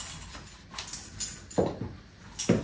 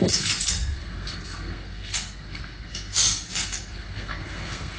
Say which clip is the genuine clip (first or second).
first